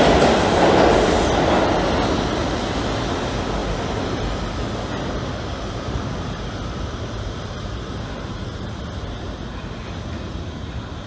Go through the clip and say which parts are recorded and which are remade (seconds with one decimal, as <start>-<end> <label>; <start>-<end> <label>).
0.0-5.5 recorded; 5.5-9.8 remade; 9.8-11.1 recorded